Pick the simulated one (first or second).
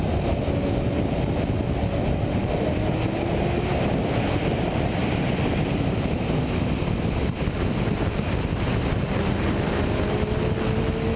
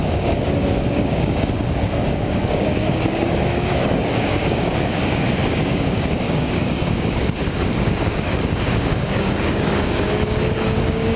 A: second